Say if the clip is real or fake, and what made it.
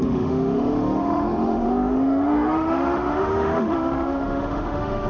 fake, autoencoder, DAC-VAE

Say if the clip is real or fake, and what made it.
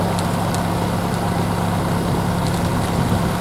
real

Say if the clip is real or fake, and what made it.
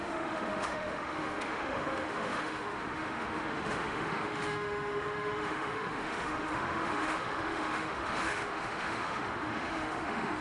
fake, autoencoder, DAC-VAE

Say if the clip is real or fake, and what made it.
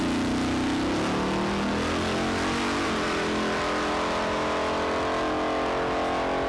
real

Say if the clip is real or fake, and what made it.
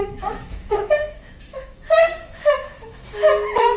fake, autoencoder, DAC-VAE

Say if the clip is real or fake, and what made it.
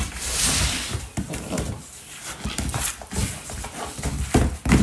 real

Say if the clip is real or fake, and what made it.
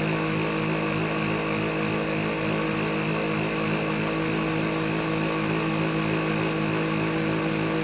real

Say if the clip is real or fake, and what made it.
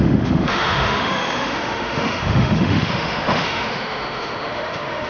fake, autoencoder, DAC-VAE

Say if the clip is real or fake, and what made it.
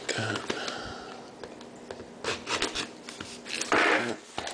real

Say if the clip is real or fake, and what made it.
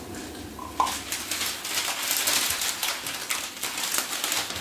real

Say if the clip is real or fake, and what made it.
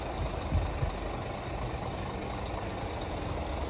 real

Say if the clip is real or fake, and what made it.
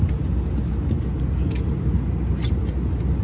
real